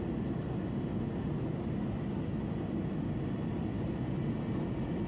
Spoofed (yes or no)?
no